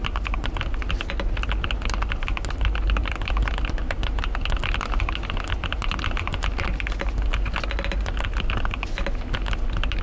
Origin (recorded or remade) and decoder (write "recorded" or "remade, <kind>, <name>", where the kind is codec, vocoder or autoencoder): recorded